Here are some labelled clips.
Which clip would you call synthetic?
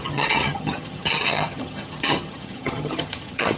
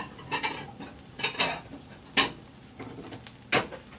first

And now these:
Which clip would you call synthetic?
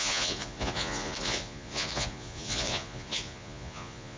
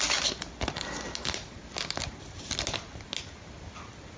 first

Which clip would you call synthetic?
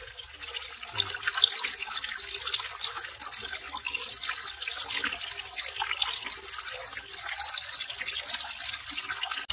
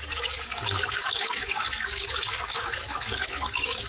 second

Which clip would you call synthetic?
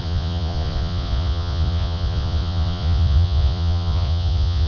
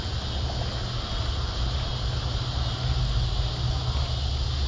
first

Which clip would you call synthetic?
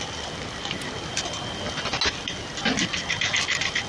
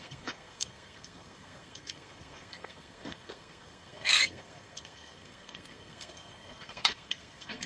second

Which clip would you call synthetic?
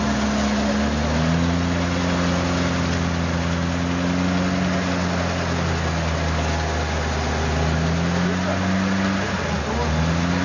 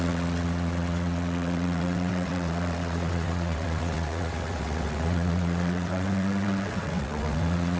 second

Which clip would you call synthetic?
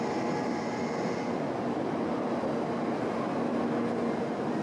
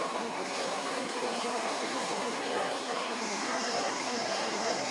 second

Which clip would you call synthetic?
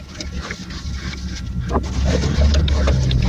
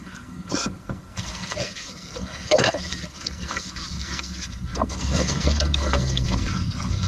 second